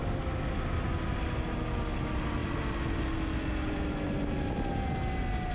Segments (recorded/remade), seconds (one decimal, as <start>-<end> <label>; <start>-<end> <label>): 0.0-5.5 recorded